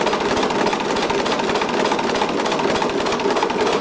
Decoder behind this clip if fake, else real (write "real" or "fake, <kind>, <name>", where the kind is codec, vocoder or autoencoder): real